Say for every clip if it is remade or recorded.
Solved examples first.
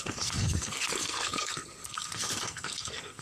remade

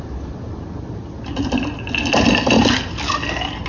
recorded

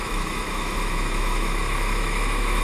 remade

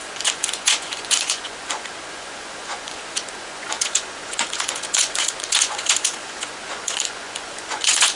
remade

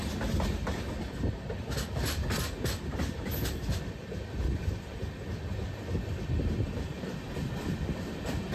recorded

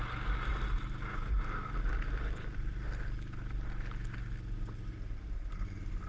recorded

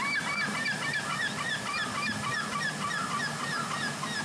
recorded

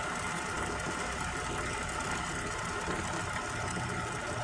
recorded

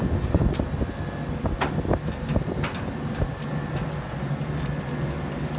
recorded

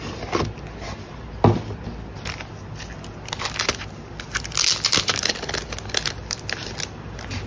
recorded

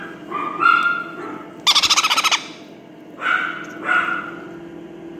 recorded